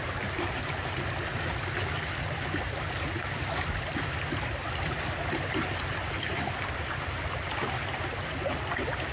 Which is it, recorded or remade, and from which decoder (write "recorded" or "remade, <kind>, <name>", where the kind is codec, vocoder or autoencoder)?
recorded